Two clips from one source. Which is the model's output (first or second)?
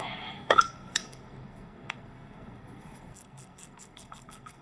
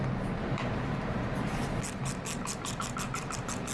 first